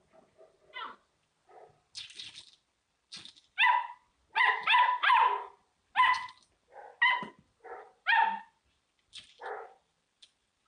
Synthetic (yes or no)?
no